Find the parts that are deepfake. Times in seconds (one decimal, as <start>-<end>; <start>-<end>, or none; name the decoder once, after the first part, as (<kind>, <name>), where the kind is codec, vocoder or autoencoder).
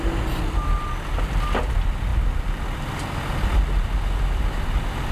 none